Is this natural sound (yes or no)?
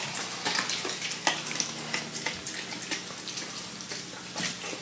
yes